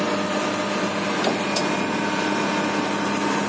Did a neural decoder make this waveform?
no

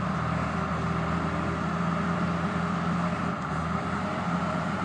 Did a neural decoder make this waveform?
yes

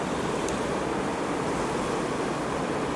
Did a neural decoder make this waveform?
no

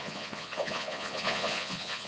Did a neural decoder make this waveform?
yes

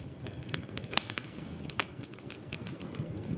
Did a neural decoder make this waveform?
yes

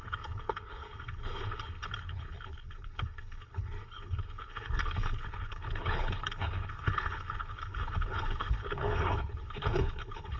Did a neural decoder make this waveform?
yes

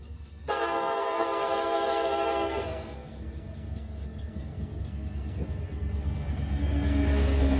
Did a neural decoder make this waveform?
yes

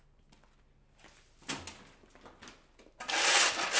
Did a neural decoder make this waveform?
no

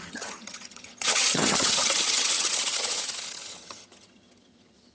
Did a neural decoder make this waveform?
yes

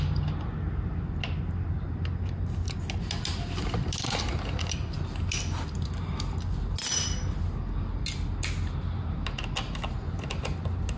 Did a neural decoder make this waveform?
no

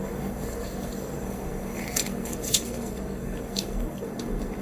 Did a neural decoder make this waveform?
yes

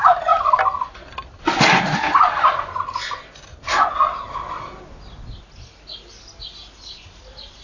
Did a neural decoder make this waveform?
no